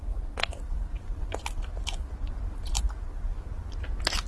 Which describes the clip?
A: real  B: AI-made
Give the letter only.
A